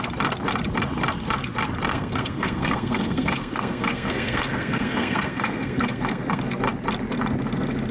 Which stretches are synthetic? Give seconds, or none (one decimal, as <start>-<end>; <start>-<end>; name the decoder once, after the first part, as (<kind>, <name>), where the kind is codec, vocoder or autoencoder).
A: 1.9-6.4 (codec, SNAC)